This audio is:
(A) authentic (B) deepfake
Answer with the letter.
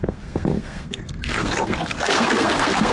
B